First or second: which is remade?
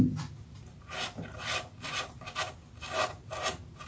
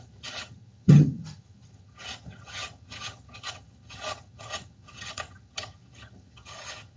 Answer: second